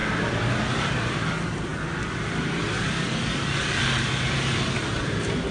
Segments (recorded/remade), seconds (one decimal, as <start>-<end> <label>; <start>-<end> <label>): 0.0-1.7 remade; 1.7-3.3 recorded; 3.3-5.5 remade